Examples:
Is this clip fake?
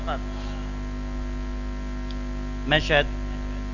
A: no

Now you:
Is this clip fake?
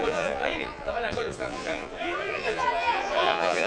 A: yes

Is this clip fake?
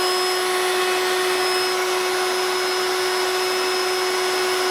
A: no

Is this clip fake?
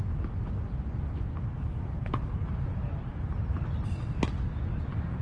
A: no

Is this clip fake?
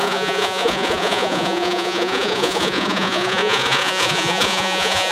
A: yes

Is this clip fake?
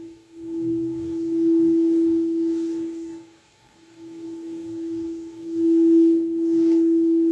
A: yes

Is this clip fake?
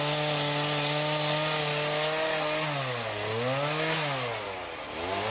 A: no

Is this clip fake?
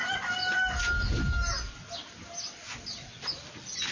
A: no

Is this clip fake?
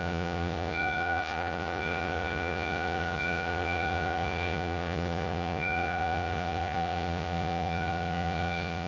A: yes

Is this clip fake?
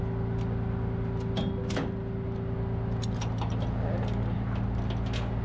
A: no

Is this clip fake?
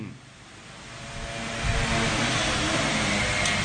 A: no